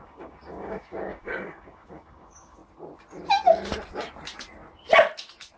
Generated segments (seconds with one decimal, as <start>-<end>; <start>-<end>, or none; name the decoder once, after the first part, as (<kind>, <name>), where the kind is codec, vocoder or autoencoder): 0.0-2.6 (codec, DAC)

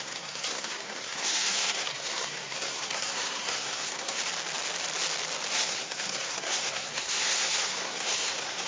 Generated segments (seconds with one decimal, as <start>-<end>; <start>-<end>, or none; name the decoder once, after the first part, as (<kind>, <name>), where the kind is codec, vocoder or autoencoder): 0.0-4.2 (codec, SNAC); 5.5-8.7

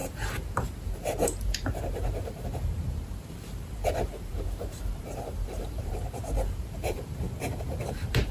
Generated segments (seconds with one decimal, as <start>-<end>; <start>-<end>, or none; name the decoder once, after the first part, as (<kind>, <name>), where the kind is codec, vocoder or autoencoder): 0.0-8.3 (vocoder, BigVGAN v2)

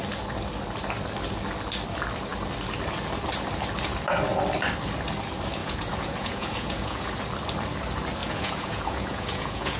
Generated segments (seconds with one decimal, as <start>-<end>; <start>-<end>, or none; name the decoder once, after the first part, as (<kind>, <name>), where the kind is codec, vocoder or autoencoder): 5.6-7.1 (vocoder, Vocos); 8.2-9.8

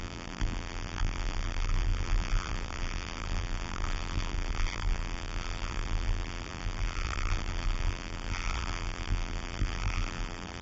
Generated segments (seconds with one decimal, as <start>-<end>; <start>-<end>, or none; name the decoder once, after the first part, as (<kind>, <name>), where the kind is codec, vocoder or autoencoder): 0.0-10.6 (vocoder, BigVGAN v2)

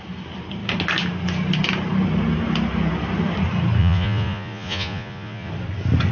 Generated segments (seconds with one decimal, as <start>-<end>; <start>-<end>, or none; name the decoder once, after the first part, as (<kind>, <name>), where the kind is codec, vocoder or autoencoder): 3.8-5.5 (vocoder, Vocos)